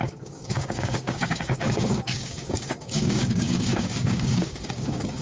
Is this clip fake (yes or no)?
yes